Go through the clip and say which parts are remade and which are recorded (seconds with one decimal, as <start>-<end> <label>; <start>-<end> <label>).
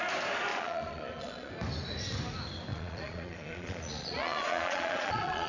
0.0-0.5 recorded; 0.5-1.5 remade; 1.5-2.7 recorded; 2.7-5.5 remade